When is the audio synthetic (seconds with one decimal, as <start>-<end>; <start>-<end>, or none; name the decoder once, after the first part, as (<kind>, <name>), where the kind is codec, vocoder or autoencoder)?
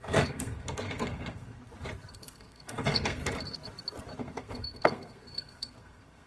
0.0-1.6 (codec, SNAC); 2.1-3.2; 4.2-6.3